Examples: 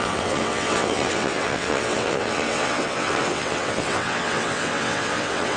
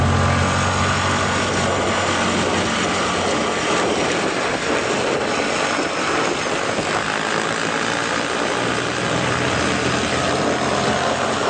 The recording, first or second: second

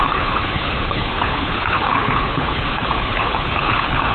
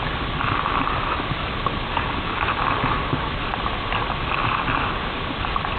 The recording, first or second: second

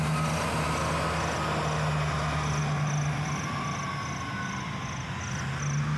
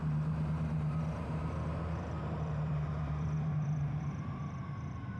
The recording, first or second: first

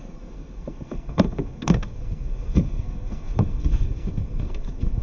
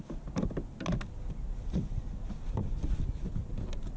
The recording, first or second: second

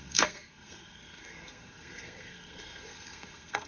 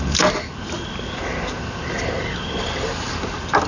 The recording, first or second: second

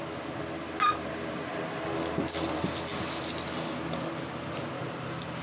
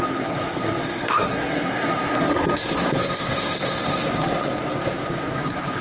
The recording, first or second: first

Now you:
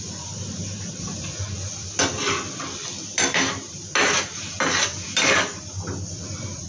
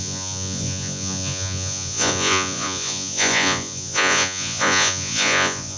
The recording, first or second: first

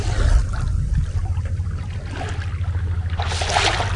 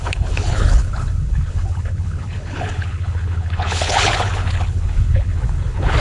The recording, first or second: first